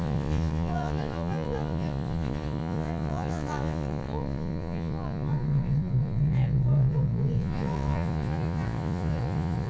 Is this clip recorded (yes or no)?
no